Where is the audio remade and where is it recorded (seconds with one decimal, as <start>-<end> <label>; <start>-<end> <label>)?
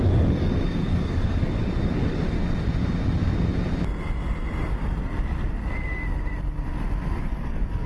0.0-2.4 remade; 2.4-7.1 recorded; 7.1-7.9 remade